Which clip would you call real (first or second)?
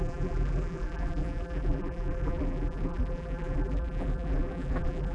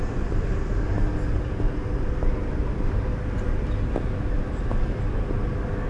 second